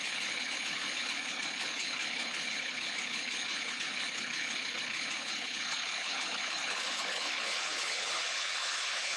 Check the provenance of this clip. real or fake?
fake